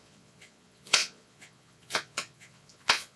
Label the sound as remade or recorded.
remade